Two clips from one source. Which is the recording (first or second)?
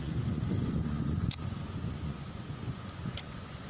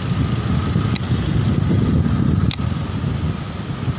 second